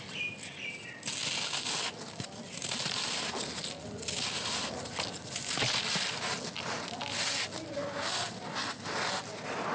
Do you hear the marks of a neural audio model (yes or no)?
no